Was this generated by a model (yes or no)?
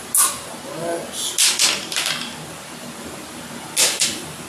no